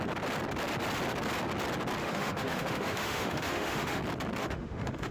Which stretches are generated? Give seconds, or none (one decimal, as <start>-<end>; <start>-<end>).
2.0-4.0; 4.4-5.1